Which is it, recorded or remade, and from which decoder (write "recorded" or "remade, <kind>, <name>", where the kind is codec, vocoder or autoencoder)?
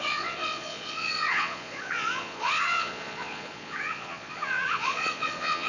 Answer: remade, vocoder, Vocos